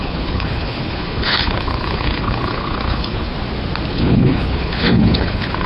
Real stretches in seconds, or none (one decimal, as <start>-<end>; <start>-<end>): 3.3-3.9